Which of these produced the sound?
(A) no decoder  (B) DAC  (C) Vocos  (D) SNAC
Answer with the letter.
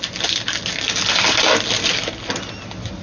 A